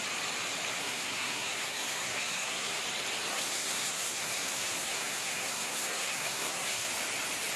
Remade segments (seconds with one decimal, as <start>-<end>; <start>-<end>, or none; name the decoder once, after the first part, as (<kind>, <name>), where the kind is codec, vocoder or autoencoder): 0.8-2.8 (codec, SNAC); 3.3-6.9